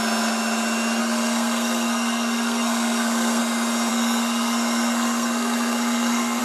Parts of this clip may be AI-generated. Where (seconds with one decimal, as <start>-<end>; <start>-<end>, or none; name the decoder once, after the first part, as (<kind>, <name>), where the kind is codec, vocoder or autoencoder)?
1.0-3.4 (codec, SNAC); 3.9-6.4